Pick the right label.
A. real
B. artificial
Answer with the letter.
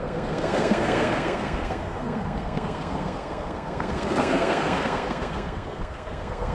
B